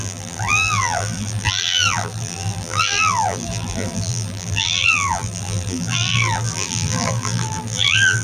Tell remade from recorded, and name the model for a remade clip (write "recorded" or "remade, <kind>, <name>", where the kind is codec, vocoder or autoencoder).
remade, vocoder, BigVGAN v2